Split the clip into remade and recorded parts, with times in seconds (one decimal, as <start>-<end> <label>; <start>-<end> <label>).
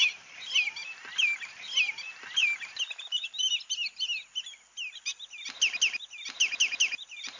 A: 0.0-7.4 recorded